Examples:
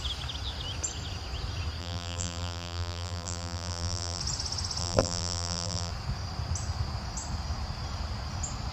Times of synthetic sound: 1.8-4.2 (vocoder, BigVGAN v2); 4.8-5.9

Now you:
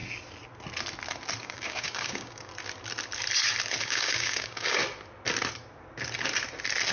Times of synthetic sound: 1.4-2.5 (codec, DAC); 3.8-4.8

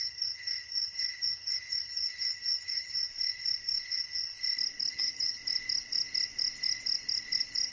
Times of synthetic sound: 0.0-3.1 (vocoder, HiFi-GAN); 3.9-4.3; 4.9-5.4

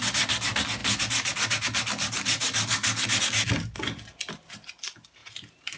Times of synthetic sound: none

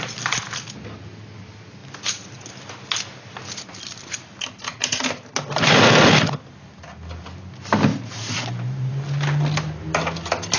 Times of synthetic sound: 7.9-8.9 (vocoder, BigVGAN v2)

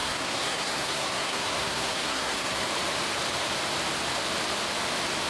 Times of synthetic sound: 0.0-2.7 (codec, SNAC)